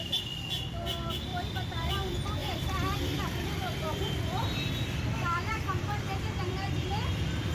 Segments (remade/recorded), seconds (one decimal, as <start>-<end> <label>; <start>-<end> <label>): 0.0-1.3 recorded; 1.3-1.9 remade; 1.9-2.4 recorded; 2.4-6.9 remade; 6.9-7.5 recorded